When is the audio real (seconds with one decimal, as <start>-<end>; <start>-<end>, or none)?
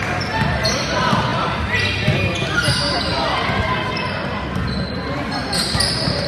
0.0-6.3